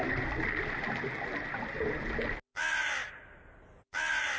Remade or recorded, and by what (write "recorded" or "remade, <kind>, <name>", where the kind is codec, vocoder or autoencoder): recorded